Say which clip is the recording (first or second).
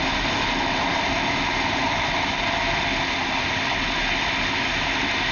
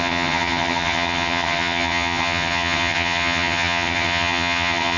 first